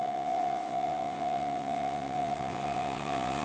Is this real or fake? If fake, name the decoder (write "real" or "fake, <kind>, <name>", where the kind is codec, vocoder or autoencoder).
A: fake, vocoder, WaveNeXt